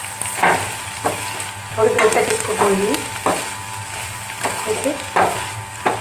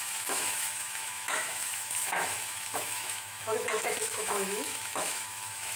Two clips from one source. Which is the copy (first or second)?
second